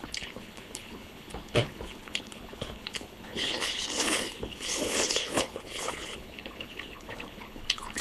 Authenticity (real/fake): fake